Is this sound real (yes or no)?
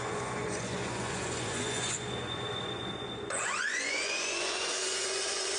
no